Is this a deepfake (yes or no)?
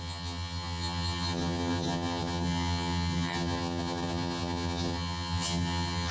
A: yes